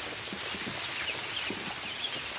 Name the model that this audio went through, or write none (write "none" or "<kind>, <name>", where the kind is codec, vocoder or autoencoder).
none